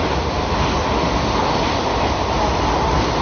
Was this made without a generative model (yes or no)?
yes